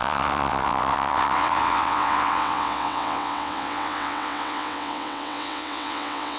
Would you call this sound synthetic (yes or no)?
yes